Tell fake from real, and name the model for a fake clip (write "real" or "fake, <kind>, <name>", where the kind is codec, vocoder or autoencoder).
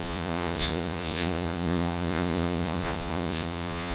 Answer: fake, vocoder, Vocos